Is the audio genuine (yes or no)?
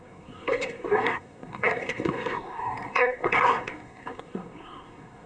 no